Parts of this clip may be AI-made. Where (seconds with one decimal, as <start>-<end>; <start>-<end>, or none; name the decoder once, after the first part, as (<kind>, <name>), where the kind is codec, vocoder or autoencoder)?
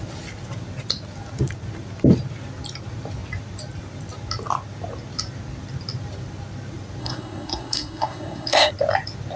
7.0-8.7 (codec, SNAC)